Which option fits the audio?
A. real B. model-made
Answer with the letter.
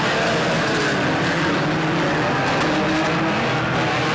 A